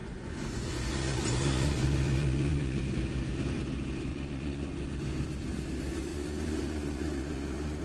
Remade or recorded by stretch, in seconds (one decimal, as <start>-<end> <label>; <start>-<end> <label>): 0.0-2.8 remade; 2.8-4.1 recorded; 4.1-4.7 remade; 4.7-6.1 recorded; 6.1-7.8 remade